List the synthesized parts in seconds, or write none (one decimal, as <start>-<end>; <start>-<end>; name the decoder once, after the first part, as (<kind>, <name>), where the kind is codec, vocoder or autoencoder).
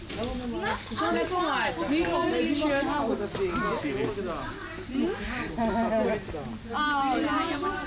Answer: 0.7-1.3 (codec, DAC)